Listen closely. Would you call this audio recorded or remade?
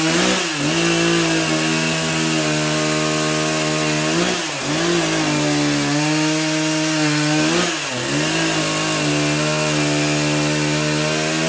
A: recorded